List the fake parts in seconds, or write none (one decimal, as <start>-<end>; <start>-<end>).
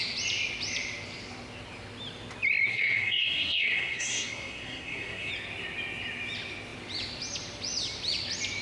2.7-5.3